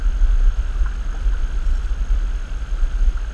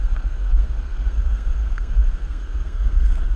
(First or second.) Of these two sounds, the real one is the first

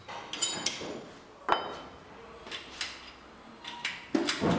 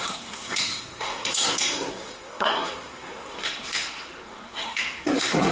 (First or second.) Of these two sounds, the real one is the first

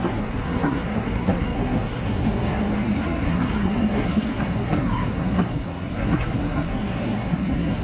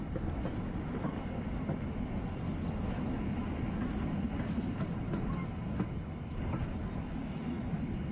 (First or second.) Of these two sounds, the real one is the second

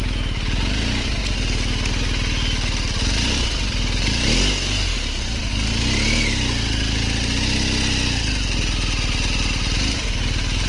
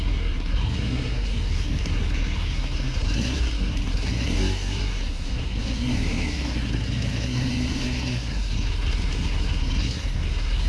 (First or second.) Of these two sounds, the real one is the first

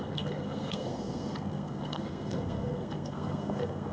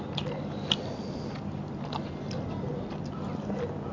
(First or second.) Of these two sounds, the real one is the second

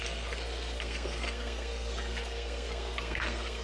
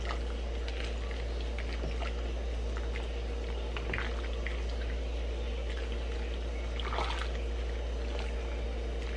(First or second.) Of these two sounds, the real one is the second